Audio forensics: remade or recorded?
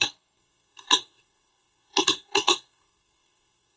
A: remade